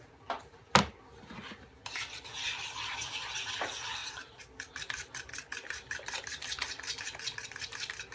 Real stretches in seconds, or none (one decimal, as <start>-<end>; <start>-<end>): 0.0-8.1